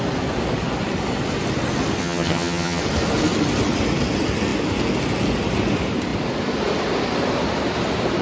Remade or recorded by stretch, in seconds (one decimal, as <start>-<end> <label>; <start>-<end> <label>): 0.0-2.0 recorded; 2.0-2.8 remade; 2.8-8.2 recorded